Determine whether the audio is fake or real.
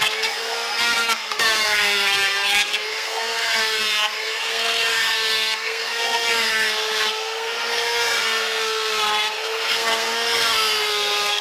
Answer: fake